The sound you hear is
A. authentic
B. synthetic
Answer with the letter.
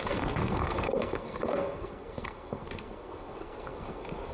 B